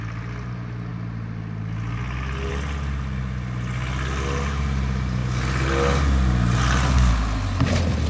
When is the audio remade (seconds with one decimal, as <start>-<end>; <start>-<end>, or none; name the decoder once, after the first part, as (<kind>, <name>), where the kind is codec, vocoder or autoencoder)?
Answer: none